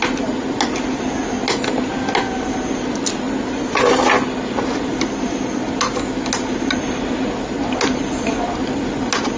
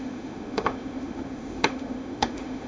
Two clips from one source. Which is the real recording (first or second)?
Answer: first